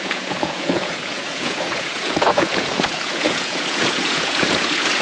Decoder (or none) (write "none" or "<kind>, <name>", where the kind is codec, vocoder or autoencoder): vocoder, Vocos